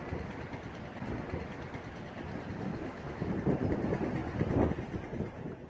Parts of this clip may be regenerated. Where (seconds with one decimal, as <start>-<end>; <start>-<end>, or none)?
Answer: 2.7-3.3

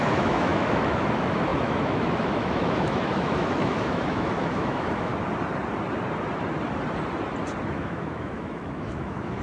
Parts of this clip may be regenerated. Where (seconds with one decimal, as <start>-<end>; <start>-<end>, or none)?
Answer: 0.0-5.1; 7.7-9.4

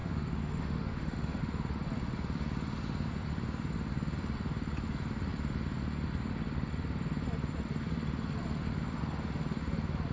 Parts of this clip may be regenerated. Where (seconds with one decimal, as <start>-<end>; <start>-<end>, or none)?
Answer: 0.0-1.4

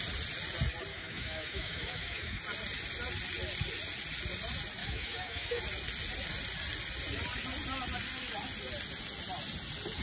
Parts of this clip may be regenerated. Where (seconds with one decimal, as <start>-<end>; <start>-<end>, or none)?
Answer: 0.9-2.4; 4.8-5.6

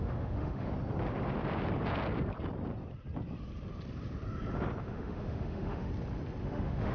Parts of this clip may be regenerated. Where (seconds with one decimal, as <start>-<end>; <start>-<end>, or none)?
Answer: 0.0-0.7; 4.8-5.9; 6.4-6.9

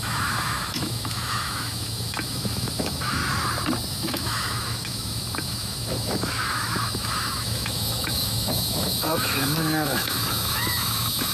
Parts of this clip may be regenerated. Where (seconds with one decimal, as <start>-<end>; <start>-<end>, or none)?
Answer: 0.0-3.2; 3.9-11.3